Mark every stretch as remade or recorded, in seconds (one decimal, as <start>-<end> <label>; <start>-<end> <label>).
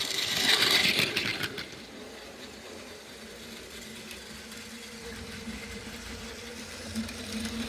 0.0-1.3 remade; 1.3-2.4 recorded; 2.4-4.2 remade; 4.2-5.1 recorded; 5.1-6.5 remade; 6.5-7.2 recorded; 7.2-7.7 remade